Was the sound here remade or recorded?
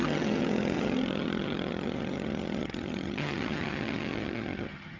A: remade